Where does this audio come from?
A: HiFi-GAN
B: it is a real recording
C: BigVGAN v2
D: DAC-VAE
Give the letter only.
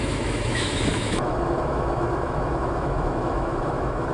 D